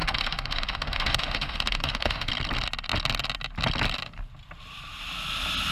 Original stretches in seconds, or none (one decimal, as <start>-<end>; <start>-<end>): 2.3-5.7